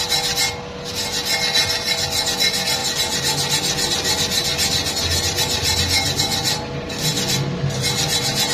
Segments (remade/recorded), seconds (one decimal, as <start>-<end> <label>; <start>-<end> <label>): 0.0-8.5 recorded